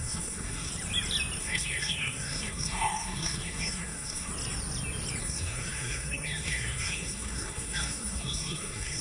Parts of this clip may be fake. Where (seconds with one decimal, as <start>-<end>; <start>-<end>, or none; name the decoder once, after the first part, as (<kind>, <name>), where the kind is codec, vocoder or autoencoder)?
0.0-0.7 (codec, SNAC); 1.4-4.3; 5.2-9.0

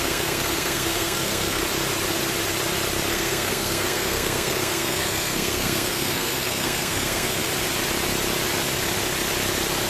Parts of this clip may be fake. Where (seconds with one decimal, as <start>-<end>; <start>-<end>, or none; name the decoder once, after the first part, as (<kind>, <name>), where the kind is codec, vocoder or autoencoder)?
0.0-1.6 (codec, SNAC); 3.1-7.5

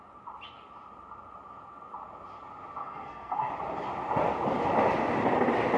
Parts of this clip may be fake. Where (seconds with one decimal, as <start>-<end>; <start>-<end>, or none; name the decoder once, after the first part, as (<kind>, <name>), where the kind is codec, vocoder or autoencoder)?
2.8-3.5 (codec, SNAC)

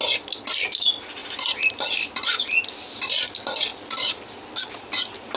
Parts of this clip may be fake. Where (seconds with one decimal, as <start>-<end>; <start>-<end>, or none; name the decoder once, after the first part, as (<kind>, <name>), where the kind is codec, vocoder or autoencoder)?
none

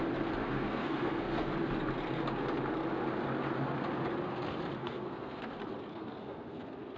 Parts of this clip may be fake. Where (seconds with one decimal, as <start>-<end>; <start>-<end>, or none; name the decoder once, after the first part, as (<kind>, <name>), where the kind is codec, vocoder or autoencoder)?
0.4-1.5 (codec, SNAC); 4.8-5.5; 5.9-7.0